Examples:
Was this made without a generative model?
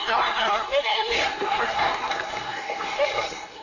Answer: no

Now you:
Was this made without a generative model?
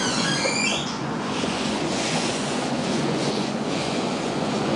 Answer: no